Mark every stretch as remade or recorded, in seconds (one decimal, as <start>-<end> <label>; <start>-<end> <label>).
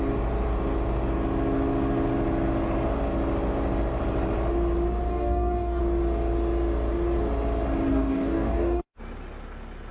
0.0-5.1 recorded; 5.1-5.8 remade; 5.8-7.9 recorded; 7.9-8.8 remade; 8.8-9.9 recorded